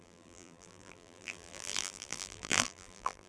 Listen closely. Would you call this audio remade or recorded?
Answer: remade